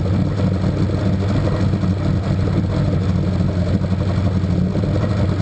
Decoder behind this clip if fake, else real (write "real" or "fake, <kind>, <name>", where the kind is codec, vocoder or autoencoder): real